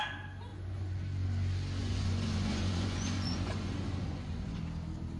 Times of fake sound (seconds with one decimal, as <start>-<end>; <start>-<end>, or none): 0.5-1.0; 1.8-4.6